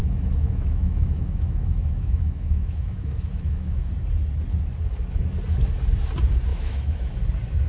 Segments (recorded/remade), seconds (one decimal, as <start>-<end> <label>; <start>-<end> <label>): 0.0-3.9 remade; 3.9-6.5 recorded; 6.5-7.2 remade; 7.2-7.7 recorded